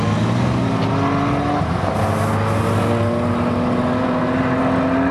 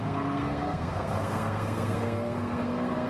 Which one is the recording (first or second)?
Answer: first